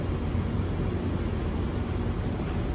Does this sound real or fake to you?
real